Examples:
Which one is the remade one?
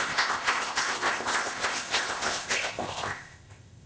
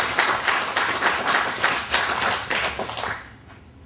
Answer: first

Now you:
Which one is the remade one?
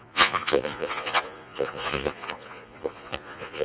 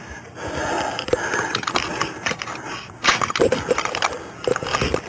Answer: first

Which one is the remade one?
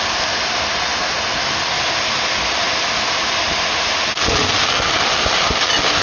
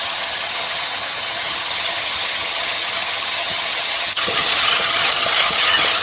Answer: second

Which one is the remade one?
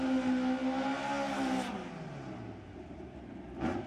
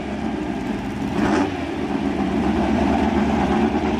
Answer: second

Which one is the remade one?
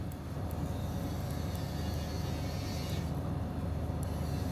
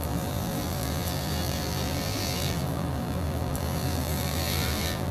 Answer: second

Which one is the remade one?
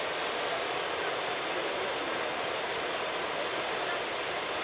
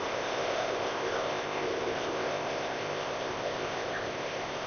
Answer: second